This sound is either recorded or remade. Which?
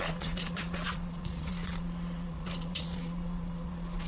remade